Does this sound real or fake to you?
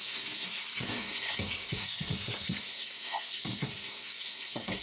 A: fake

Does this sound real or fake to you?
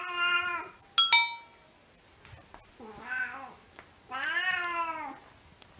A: real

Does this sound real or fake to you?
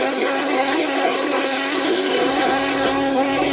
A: fake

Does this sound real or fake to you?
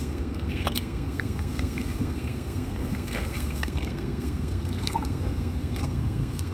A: fake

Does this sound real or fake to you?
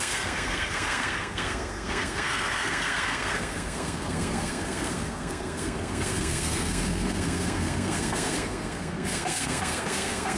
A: fake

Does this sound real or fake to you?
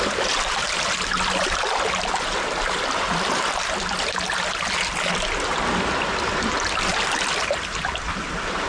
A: real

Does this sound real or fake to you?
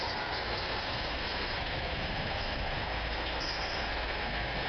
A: fake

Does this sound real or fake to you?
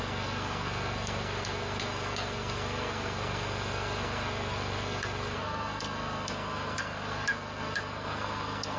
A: fake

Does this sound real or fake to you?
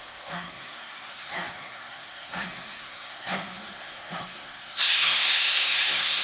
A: fake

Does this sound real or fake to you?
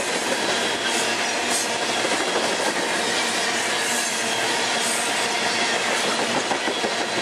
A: real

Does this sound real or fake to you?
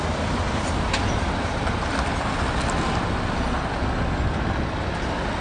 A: real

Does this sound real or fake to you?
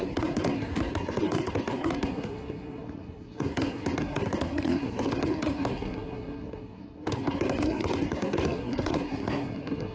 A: fake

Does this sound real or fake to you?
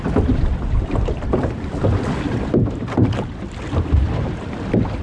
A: real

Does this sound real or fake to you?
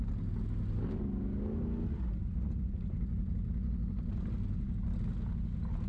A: real